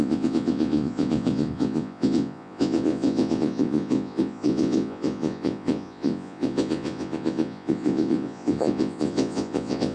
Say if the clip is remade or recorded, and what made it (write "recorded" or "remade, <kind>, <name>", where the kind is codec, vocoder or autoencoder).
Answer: remade, vocoder, Vocos